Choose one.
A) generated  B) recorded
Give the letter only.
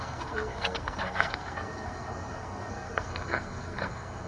A